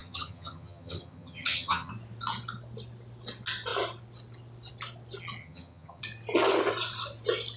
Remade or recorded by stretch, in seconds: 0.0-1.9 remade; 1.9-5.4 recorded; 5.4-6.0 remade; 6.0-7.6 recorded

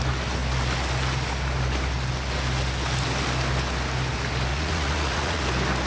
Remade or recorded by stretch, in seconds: 0.0-4.5 recorded; 4.5-5.4 remade; 5.4-5.9 recorded

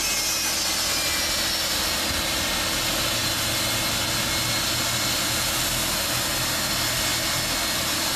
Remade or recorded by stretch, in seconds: 0.0-8.2 recorded

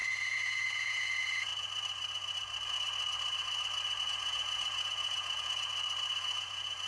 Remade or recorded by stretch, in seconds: 0.0-1.5 remade; 1.5-4.0 recorded; 4.0-5.7 remade; 5.7-6.2 recorded; 6.2-6.9 remade